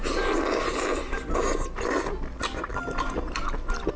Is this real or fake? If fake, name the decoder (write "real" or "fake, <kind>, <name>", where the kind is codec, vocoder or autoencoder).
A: real